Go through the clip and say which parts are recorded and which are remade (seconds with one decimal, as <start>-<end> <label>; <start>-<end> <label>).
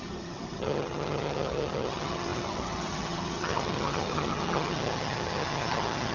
0.0-6.1 remade